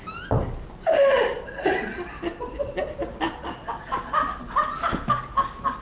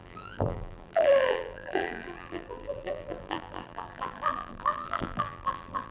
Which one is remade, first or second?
second